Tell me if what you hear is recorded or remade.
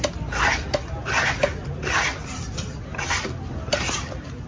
recorded